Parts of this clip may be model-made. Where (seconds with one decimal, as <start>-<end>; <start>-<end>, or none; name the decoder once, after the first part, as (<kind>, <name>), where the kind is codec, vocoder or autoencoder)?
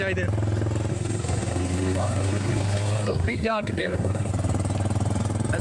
0.9-4.3 (codec, SNAC)